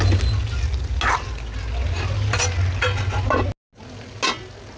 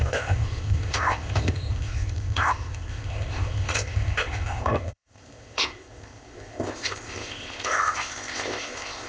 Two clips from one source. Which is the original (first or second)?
first